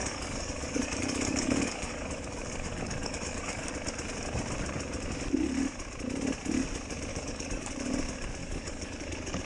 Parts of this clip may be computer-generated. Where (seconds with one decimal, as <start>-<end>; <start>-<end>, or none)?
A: 0.0-3.7; 7.1-7.7; 8.4-9.4

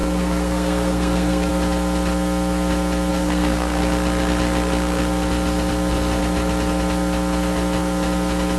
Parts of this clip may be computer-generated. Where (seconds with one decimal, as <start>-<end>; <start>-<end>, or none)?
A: 0.0-1.5; 3.1-3.8

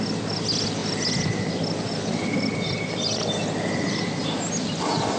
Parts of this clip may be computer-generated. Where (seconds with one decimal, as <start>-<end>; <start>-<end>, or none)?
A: none

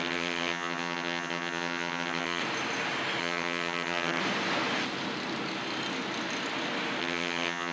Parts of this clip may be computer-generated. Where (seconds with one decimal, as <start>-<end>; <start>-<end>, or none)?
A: 0.0-2.4; 3.2-4.2; 7.0-7.7

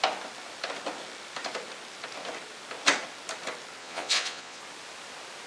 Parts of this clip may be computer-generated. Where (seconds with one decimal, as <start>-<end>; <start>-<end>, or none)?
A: 3.8-4.6

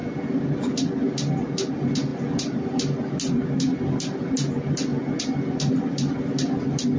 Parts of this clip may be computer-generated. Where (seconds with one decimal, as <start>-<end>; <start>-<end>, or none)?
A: none

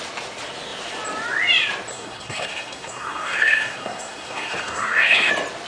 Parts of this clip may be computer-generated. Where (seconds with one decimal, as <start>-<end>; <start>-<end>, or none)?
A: 1.9-5.3

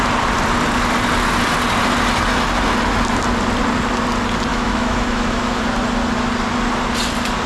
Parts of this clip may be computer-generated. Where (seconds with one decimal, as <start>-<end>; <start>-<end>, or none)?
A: 4.5-5.6